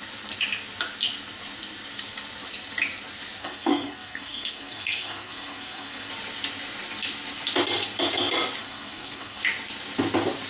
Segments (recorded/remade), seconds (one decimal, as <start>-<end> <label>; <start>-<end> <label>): 0.0-3.4 recorded; 3.4-6.1 remade; 6.1-8.6 recorded; 8.6-9.4 remade; 9.4-10.5 recorded